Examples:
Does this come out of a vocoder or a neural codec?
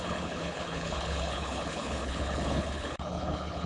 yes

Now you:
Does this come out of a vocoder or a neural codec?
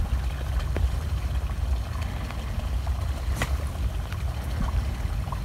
no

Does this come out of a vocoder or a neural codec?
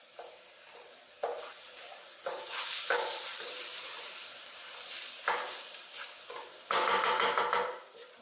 no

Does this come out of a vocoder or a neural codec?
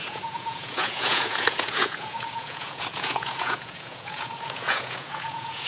yes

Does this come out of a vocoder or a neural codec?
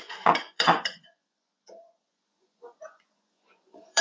yes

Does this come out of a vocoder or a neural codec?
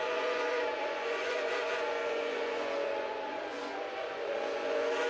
yes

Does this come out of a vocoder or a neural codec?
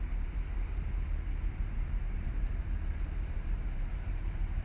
yes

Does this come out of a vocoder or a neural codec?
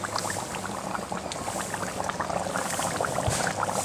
no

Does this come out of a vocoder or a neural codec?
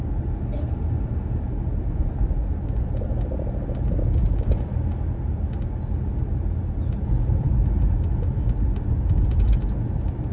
no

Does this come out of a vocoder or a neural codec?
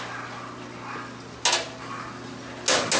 no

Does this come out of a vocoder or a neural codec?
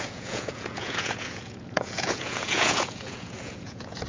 yes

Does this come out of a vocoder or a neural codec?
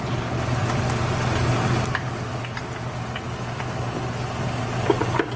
no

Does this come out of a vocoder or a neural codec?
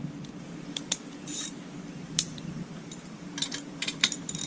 yes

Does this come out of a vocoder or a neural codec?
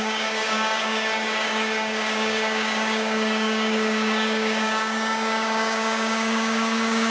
yes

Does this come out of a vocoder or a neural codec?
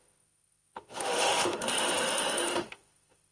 yes